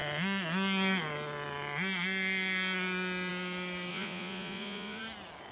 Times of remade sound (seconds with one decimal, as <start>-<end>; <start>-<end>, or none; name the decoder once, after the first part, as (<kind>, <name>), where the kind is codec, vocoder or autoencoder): 3.9-5.0 (vocoder, Vocos)